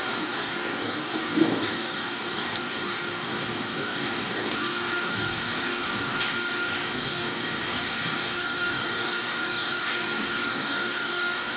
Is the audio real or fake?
fake